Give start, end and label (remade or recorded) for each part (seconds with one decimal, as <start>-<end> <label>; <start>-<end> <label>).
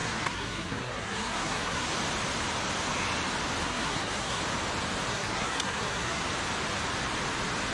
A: 0.0-1.9 remade; 1.9-3.6 recorded; 3.6-4.4 remade; 4.4-5.1 recorded; 5.1-6.3 remade; 6.3-7.7 recorded